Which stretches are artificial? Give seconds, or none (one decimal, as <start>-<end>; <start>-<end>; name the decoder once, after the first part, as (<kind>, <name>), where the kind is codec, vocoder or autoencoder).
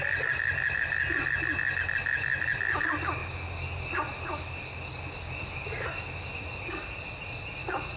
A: none